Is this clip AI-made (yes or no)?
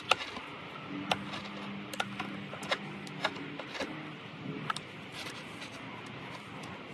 no